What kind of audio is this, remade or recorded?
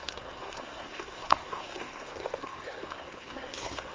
remade